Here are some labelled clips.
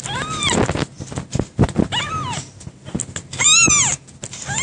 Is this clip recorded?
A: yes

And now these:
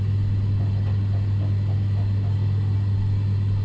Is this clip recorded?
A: yes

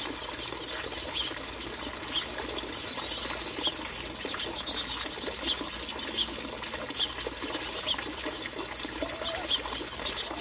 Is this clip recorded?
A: yes